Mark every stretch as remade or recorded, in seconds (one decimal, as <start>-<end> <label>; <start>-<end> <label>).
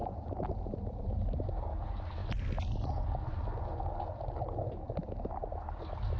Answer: 0.0-6.2 recorded